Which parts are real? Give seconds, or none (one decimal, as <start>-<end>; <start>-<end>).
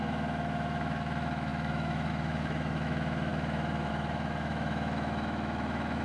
none